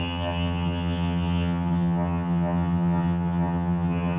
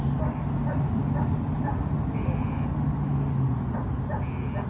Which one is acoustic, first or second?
second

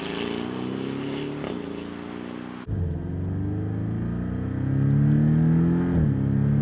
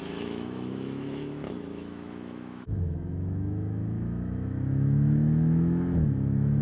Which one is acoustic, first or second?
first